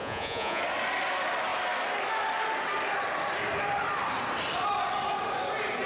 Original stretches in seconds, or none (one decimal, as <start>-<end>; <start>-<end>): 0.6-5.9